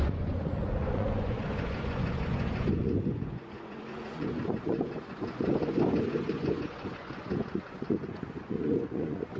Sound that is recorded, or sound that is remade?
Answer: remade